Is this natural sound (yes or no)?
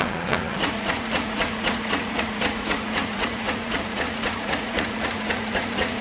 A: no